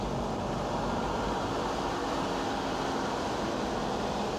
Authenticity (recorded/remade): recorded